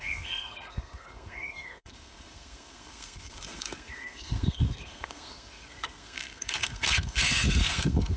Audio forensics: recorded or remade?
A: remade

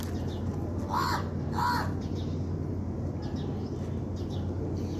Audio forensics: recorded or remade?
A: recorded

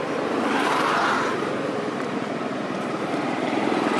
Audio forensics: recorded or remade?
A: remade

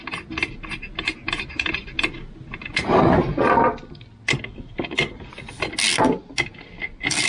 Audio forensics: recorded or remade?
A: recorded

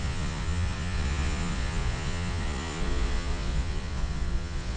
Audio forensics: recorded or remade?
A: remade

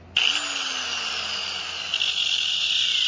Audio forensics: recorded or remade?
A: recorded